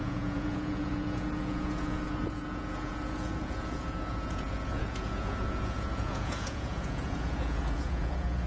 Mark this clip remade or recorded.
remade